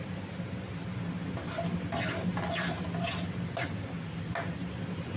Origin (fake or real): real